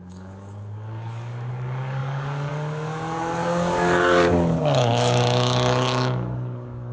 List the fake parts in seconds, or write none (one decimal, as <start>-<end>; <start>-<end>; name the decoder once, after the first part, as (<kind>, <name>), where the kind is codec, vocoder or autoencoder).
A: 0.0-6.9 (codec, DAC)